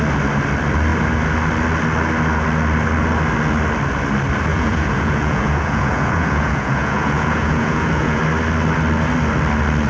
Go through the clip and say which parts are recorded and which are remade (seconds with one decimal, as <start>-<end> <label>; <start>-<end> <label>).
0.0-4.5 recorded; 4.5-8.2 remade; 8.2-9.9 recorded